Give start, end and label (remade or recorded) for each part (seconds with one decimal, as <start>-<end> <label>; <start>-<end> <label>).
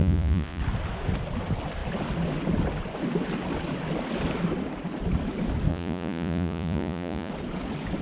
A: 0.0-0.6 remade; 0.6-5.7 recorded; 5.7-7.3 remade; 7.3-8.0 recorded